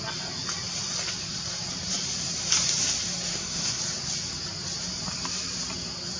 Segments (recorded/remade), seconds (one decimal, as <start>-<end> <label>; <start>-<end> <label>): 0.0-3.3 recorded; 3.3-3.8 remade; 3.8-6.2 recorded

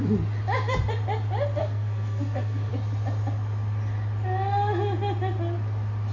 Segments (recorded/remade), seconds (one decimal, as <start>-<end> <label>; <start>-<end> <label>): 0.0-1.6 recorded; 1.6-2.7 remade; 2.7-6.1 recorded

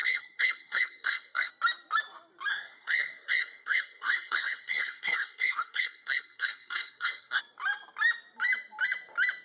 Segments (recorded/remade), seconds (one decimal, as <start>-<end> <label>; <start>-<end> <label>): 0.0-1.5 remade; 1.5-2.5 recorded; 2.5-7.4 remade; 7.4-9.4 recorded

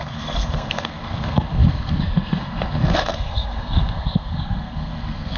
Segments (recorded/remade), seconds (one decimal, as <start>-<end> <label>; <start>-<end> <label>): 0.0-5.4 remade